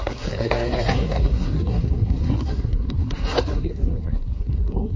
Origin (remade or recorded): remade